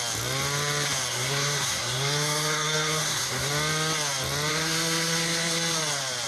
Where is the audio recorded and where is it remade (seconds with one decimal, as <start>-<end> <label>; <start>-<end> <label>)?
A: 0.0-1.1 recorded; 1.1-3.5 remade; 3.5-4.5 recorded; 4.5-5.6 remade; 5.6-6.3 recorded